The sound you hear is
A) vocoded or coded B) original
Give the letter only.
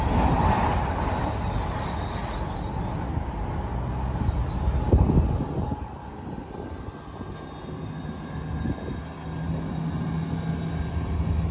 B